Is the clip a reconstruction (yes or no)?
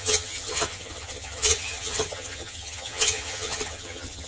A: yes